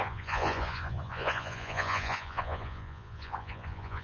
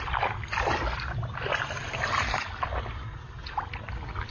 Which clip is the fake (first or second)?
first